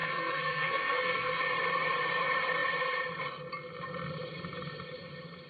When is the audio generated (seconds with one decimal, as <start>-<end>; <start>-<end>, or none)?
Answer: 0.0-1.4